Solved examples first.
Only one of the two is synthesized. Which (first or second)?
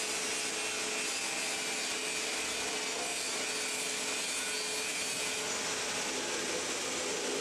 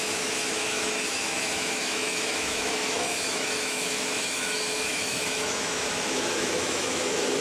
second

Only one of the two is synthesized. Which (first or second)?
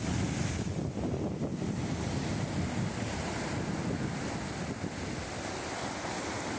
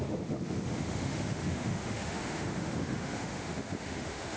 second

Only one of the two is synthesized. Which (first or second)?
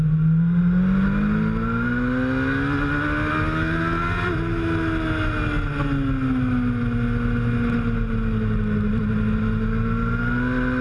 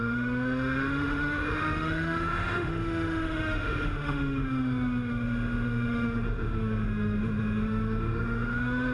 second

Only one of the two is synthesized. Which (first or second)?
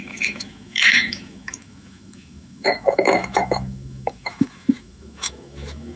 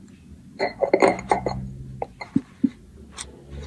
first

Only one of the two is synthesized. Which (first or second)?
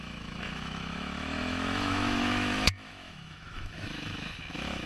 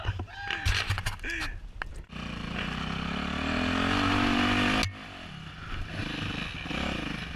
first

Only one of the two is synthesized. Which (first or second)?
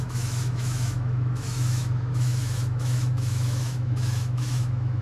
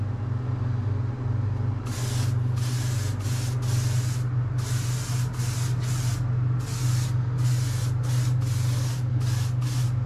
first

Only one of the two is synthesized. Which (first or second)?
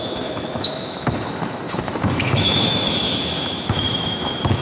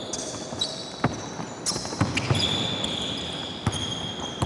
first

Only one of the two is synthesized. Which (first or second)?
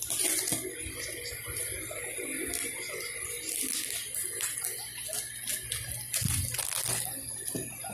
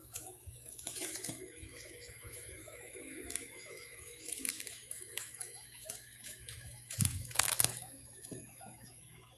second